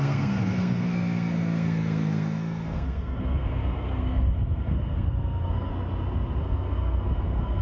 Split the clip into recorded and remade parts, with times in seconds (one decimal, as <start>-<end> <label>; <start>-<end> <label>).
0.0-5.7 remade; 5.7-6.4 recorded; 6.4-7.6 remade